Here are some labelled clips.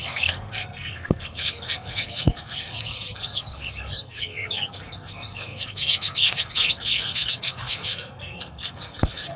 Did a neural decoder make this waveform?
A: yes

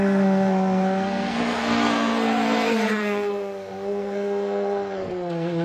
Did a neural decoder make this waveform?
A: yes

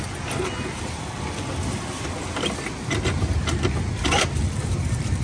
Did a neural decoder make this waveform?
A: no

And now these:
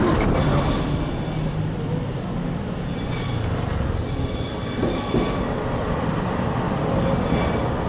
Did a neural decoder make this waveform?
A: no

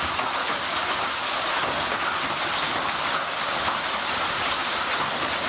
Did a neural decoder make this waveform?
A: no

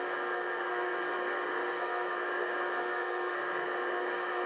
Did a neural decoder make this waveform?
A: yes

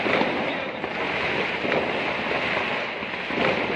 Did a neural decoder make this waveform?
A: no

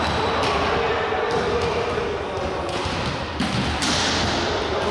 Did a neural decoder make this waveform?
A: no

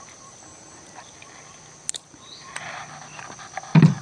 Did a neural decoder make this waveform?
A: no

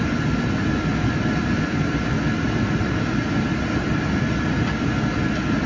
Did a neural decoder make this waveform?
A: no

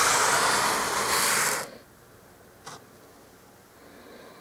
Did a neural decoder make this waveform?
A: no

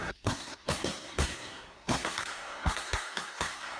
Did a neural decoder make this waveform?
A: yes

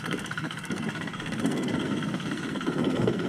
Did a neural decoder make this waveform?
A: yes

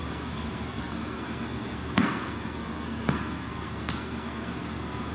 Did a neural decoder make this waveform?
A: yes